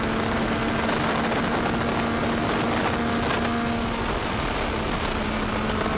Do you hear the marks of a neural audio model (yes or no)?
no